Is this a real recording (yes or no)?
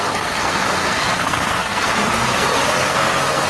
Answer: no